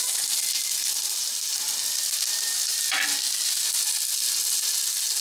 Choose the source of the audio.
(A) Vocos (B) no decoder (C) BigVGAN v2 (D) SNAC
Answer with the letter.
B